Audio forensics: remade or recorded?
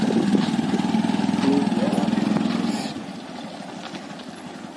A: recorded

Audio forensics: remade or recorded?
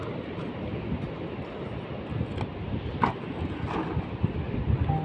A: recorded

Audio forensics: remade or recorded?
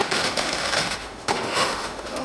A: remade